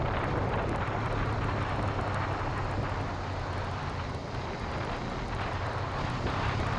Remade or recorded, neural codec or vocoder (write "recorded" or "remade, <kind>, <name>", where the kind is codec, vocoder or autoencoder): recorded